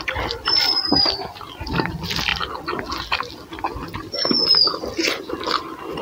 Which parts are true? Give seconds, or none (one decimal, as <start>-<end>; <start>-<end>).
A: 2.3-4.7